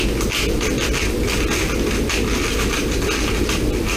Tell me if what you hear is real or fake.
real